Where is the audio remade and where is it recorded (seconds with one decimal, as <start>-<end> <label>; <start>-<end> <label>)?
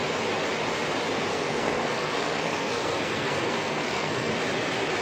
0.0-1.3 recorded; 1.3-4.3 remade; 4.3-5.0 recorded